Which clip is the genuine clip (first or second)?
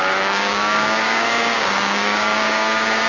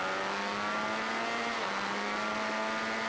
second